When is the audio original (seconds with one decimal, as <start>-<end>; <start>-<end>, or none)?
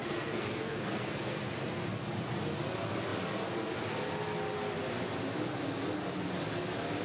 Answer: 1.4-7.0